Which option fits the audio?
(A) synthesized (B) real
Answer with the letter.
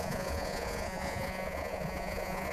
A